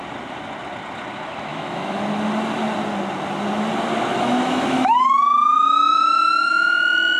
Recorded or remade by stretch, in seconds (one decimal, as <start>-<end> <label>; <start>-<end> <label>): 0.0-1.5 recorded; 1.5-2.0 remade; 2.0-4.1 recorded; 4.1-6.5 remade; 6.5-7.2 recorded